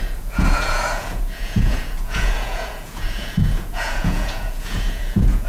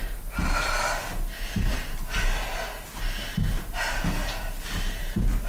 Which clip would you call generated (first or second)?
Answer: first